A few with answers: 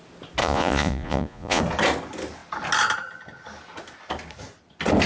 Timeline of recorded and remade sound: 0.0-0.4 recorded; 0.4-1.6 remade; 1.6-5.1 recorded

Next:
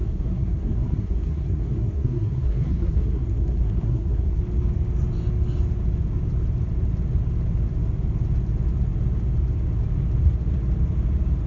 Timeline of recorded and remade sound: 0.0-4.4 remade; 4.4-11.5 recorded

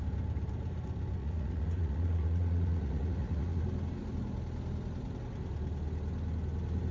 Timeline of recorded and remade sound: 0.0-1.2 recorded; 1.2-3.6 remade; 3.6-6.9 recorded

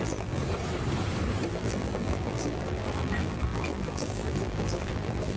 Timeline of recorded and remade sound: 0.0-0.4 remade; 0.4-1.5 recorded; 1.5-5.4 remade

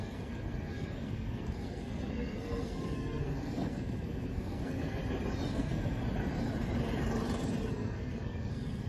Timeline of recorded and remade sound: 0.0-5.0 remade; 5.0-5.5 recorded; 5.5-6.0 remade; 6.0-7.7 recorded; 7.7-8.9 remade